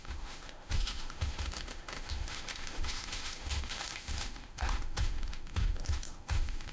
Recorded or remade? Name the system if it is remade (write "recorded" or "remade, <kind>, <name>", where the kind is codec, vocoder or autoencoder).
remade, autoencoder, DAC-VAE